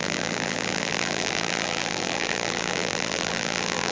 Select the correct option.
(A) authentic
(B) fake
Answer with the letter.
B